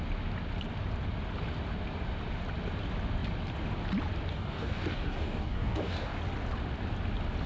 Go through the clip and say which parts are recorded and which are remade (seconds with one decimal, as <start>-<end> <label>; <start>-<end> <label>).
0.0-4.3 recorded; 4.3-6.2 remade; 6.2-7.5 recorded